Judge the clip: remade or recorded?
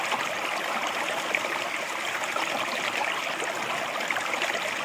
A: recorded